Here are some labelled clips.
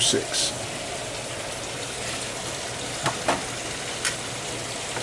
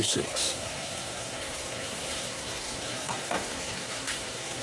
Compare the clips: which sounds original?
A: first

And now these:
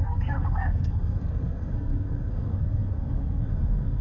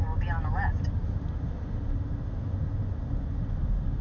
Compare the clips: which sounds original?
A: second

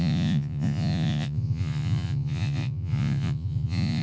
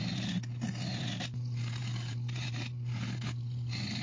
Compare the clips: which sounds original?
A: second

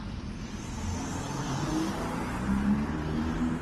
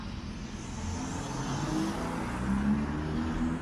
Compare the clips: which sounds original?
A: second